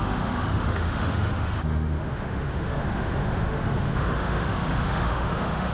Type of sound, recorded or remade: remade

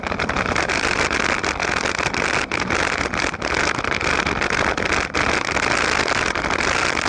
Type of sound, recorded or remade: recorded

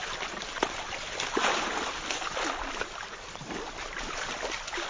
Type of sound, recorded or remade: recorded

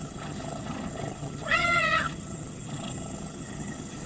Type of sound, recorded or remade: remade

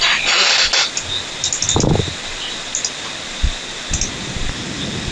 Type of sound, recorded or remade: recorded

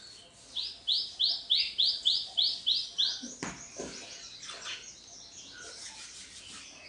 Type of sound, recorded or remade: recorded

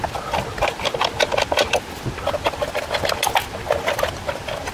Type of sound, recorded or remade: recorded